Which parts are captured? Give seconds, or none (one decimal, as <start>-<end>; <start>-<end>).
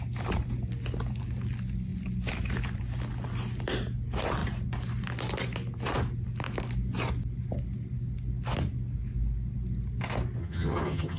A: 0.0-10.4